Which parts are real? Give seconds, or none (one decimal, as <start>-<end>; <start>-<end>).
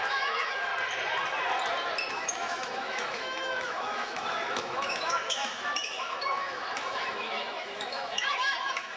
0.7-2.1